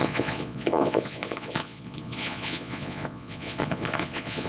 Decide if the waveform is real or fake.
fake